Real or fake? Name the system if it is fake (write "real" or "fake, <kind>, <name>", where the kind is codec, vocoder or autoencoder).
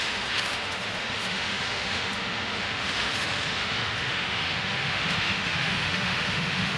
fake, autoencoder, DAC-VAE